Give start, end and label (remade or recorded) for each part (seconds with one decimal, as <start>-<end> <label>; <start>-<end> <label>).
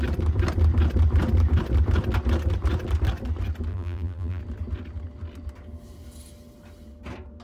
0.0-3.7 recorded; 3.7-4.4 remade; 4.4-7.4 recorded